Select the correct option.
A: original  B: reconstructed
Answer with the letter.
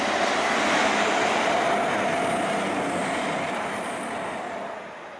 A